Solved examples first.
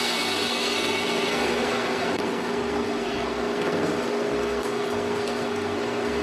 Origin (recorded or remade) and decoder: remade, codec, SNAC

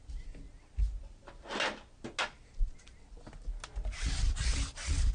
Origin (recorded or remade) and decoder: recorded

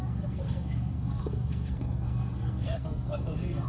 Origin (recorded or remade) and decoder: remade, codec, SNAC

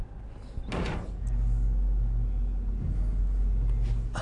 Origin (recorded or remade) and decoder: recorded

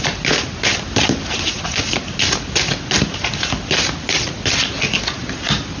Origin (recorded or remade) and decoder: recorded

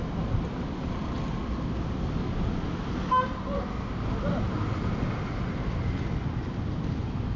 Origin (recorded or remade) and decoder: recorded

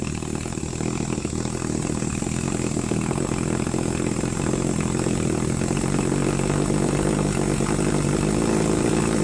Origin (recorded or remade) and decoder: recorded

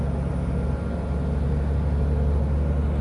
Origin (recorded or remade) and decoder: recorded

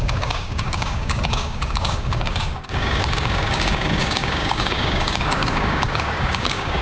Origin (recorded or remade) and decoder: remade, codec, DAC